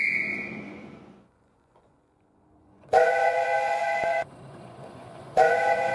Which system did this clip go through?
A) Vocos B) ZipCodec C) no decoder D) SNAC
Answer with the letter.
A